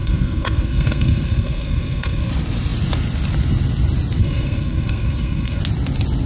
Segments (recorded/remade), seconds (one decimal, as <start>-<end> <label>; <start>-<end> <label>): 0.0-2.3 remade; 2.3-4.2 recorded; 4.2-5.6 remade; 5.6-6.3 recorded